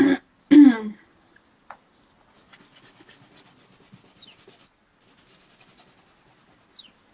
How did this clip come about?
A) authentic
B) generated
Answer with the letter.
A